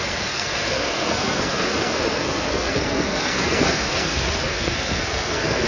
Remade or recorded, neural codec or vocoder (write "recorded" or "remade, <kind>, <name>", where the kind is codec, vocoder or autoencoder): remade, codec, SNAC